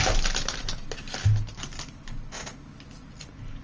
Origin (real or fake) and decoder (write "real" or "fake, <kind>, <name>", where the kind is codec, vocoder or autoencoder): real